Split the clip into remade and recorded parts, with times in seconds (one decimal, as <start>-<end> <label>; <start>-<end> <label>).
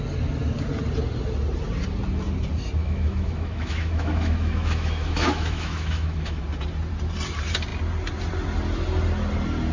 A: 0.0-2.8 recorded; 2.8-6.4 remade; 6.4-9.7 recorded